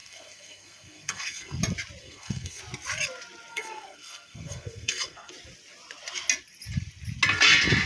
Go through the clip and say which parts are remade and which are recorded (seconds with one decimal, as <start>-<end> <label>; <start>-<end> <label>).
0.0-1.6 remade; 1.6-2.0 recorded; 2.0-2.6 remade; 2.6-3.5 recorded; 3.5-5.3 remade; 5.3-7.9 recorded